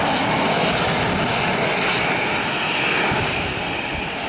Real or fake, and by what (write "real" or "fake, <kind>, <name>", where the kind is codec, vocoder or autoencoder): real